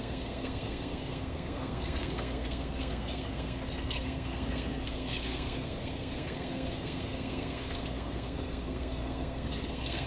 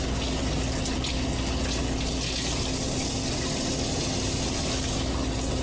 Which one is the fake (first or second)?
first